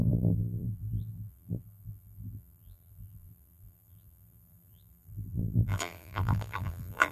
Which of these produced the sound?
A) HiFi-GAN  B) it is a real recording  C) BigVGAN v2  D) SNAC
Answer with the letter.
C